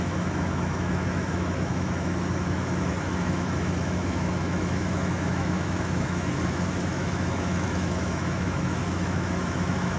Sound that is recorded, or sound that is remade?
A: remade